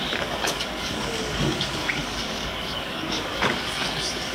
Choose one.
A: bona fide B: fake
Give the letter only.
B